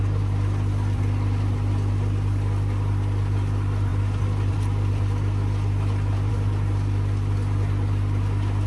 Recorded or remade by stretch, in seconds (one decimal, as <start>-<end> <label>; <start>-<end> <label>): 0.0-8.7 recorded